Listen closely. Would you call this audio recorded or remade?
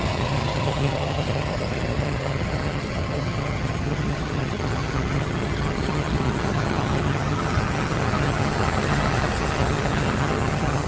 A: remade